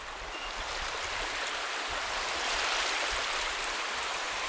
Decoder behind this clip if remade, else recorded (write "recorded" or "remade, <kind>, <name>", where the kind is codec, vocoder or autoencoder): recorded